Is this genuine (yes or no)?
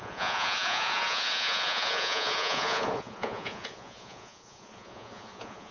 no